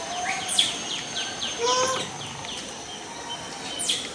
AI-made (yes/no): no